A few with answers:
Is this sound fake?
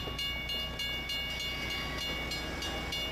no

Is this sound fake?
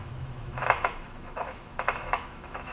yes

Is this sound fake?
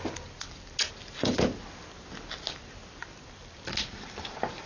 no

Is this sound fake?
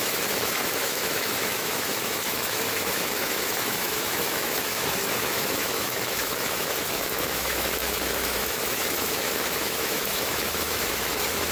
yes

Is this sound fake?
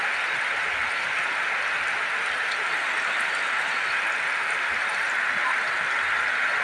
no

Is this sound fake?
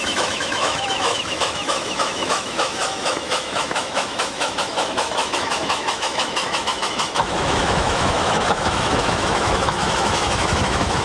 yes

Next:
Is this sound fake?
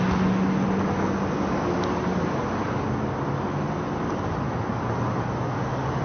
no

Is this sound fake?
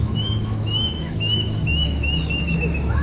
yes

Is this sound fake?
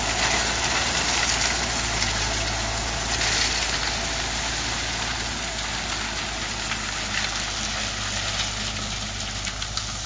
no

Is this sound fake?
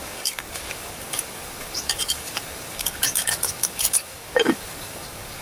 yes